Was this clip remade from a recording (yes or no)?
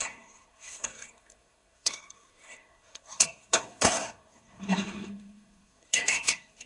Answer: yes